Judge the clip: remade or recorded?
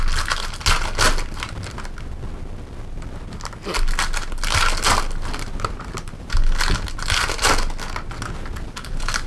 recorded